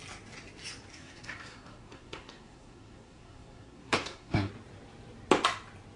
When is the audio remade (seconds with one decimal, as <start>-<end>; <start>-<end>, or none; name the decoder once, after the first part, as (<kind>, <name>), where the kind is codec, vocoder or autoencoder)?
0.9-4.5 (codec, SNAC)